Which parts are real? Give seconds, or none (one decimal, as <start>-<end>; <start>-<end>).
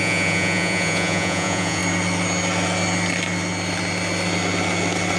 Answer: 1.8-5.2